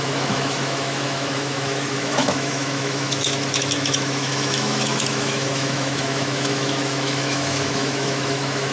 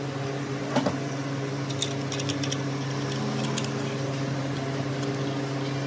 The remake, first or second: first